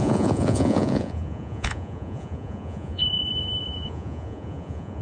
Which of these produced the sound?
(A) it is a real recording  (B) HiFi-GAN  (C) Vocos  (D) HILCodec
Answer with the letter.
C